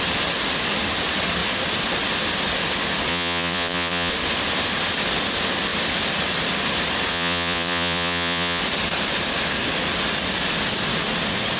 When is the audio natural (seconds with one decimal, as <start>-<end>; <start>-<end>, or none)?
0.0-3.1; 4.1-7.1; 8.6-11.6